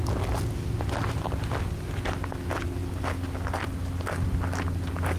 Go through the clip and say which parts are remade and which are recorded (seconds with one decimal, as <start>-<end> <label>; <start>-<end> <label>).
0.0-5.2 recorded